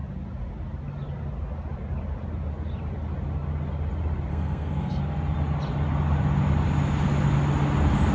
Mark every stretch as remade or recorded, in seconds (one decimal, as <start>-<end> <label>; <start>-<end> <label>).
0.0-4.3 recorded; 4.3-5.0 remade; 5.0-8.1 recorded

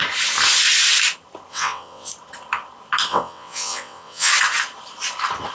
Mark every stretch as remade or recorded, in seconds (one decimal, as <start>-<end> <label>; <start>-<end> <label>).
0.0-1.5 recorded; 1.5-2.1 remade; 2.1-3.1 recorded; 3.1-4.3 remade; 4.3-5.5 recorded

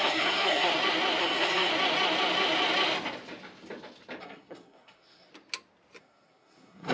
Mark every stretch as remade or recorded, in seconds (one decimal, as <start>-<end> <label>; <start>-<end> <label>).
0.0-0.7 remade; 0.7-1.2 recorded; 1.2-1.7 remade; 1.7-4.2 recorded; 4.2-5.3 remade; 5.3-6.0 recorded; 6.0-6.9 remade

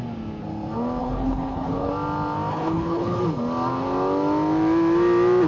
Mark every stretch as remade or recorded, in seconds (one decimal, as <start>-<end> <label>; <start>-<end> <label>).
0.0-1.0 recorded; 1.0-1.9 remade; 1.9-2.5 recorded; 2.5-3.2 remade; 3.2-5.5 recorded

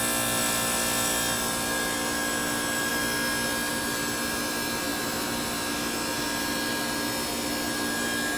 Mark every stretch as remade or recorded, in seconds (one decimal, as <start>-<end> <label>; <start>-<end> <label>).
0.0-8.4 recorded